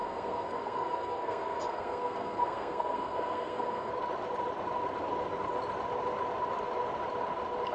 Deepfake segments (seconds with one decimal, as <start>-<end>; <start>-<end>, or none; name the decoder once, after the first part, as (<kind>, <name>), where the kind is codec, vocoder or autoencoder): 0.0-3.9 (codec, SNAC)